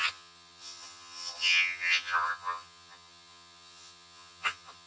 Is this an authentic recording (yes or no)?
no